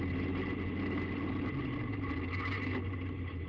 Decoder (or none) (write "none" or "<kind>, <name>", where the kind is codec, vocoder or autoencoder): none